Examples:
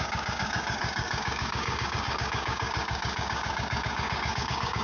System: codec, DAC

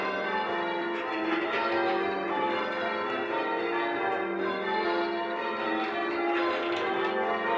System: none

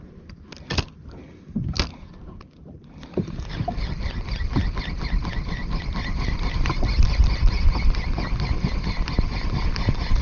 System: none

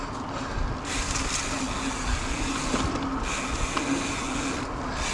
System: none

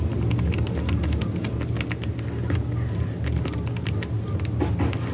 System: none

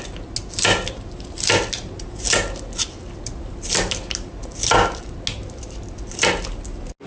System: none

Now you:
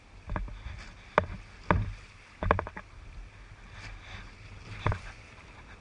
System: none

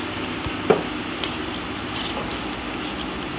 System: none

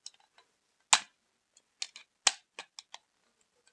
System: none